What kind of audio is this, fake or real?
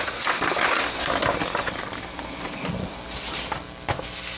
real